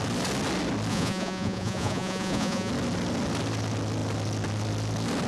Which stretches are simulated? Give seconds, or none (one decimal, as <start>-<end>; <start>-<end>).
0.9-2.7